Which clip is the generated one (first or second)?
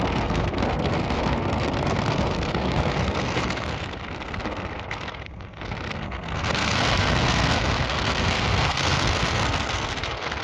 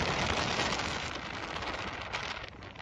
first